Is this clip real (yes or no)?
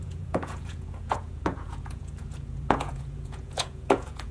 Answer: no